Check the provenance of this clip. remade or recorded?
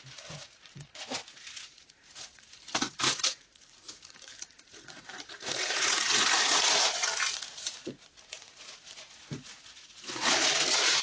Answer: remade